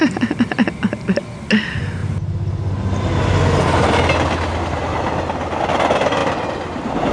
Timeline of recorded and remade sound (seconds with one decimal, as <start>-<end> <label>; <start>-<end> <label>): 0.0-7.1 recorded